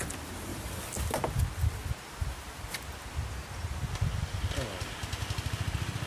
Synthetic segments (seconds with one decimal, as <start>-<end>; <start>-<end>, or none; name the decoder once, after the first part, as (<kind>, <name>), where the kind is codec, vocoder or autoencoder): none